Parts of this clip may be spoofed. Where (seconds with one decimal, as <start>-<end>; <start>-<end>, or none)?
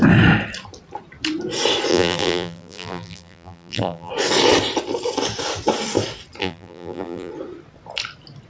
1.9-4.1; 6.4-7.3